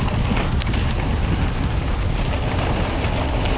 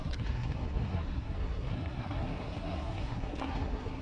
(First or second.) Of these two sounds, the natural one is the first